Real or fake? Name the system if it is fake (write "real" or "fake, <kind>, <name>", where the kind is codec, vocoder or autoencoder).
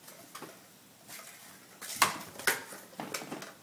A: real